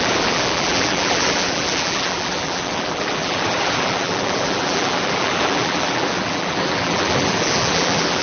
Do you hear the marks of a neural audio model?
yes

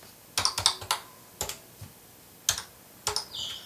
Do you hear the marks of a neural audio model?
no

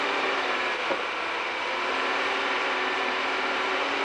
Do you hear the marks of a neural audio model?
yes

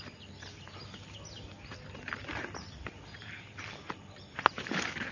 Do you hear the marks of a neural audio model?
no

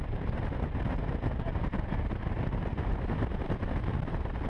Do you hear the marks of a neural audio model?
yes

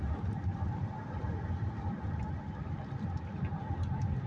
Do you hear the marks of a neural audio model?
no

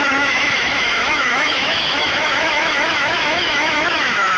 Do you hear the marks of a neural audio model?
yes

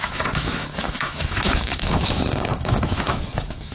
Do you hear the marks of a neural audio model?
yes